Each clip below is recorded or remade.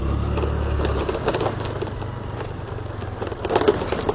recorded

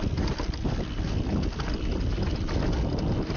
recorded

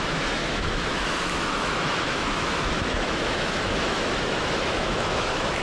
remade